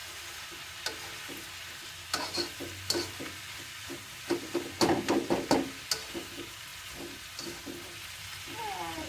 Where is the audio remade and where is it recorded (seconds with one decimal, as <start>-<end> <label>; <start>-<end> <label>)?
0.0-9.1 recorded